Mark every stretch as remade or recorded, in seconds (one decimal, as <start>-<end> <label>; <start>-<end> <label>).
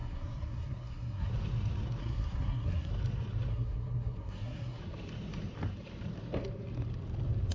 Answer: 0.0-1.3 remade; 1.3-2.0 recorded; 2.0-2.9 remade; 2.9-3.5 recorded; 3.5-4.8 remade; 4.8-7.5 recorded